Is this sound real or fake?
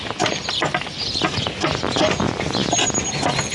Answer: real